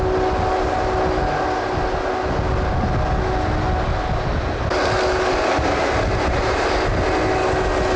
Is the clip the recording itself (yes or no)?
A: yes